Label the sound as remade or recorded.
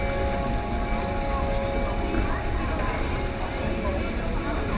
recorded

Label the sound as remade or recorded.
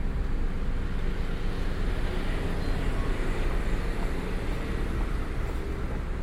recorded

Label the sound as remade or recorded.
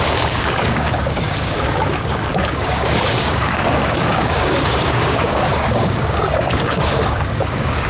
remade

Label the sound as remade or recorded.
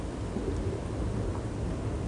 recorded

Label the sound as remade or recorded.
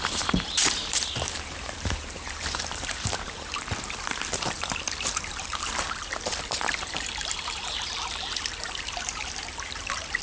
remade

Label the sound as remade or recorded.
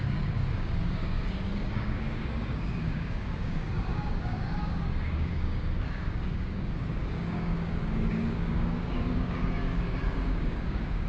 remade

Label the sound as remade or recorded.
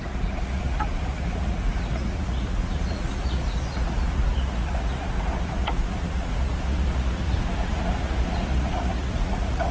remade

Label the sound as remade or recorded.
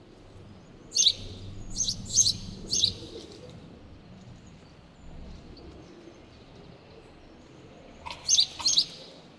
recorded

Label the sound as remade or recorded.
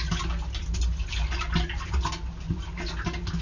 recorded